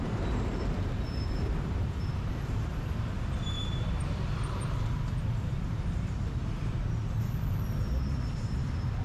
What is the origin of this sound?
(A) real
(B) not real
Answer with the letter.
B